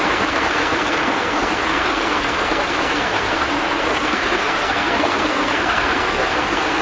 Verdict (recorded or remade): remade